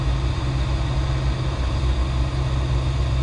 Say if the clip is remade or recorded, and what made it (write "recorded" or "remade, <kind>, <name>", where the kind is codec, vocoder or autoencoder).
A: recorded